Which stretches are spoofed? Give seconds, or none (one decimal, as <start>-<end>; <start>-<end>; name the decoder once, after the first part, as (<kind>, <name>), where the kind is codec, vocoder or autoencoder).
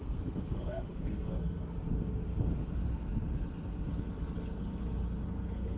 0.0-1.8 (codec, SNAC); 5.3-5.8